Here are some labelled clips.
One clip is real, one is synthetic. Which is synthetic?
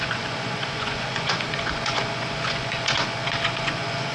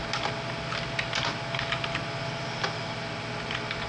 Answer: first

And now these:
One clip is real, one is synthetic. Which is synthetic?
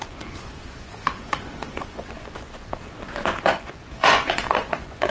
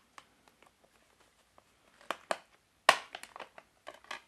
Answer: first